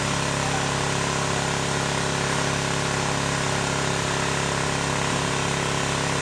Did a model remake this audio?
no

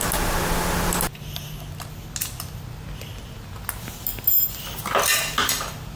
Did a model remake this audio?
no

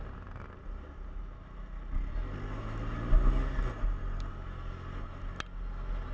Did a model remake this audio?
no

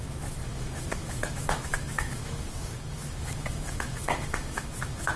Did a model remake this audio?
yes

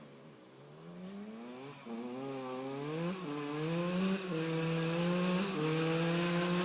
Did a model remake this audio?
no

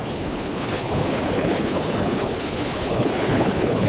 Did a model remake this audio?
yes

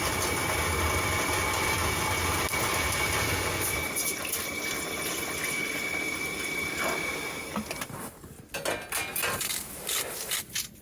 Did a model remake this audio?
no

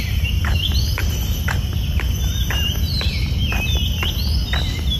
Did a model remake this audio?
no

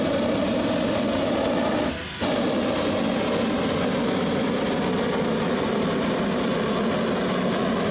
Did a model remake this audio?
no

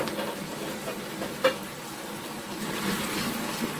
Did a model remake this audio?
no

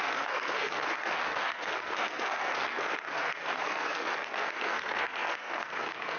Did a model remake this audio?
yes